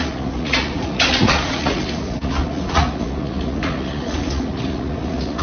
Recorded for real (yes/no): no